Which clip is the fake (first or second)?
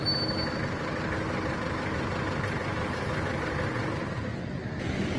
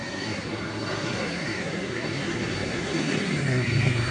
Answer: second